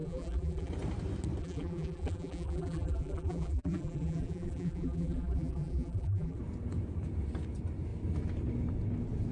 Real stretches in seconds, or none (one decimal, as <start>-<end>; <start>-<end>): 0.7-1.4; 6.4-9.3